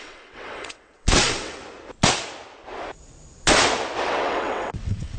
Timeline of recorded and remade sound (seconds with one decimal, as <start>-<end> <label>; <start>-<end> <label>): 0.0-1.6 remade; 1.6-4.0 recorded; 4.0-5.2 remade